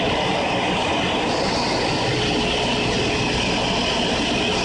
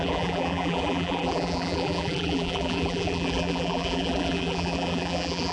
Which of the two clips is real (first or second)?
first